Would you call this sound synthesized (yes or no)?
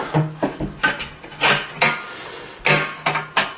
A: no